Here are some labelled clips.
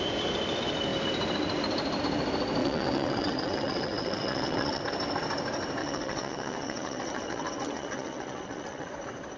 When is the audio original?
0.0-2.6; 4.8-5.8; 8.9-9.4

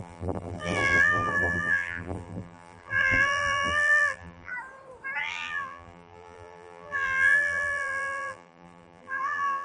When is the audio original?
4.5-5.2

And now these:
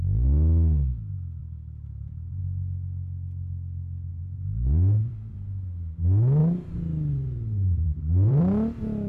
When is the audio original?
0.0-1.4; 2.4-4.1; 6.0-6.4; 8.4-9.1